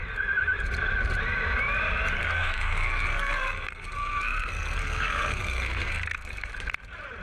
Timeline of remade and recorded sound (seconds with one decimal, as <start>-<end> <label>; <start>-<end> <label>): 0.0-2.2 recorded; 2.2-6.5 remade; 6.5-7.2 recorded